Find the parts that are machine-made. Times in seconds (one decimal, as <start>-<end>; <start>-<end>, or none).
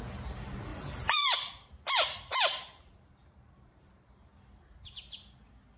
0.7-1.4; 2.3-4.3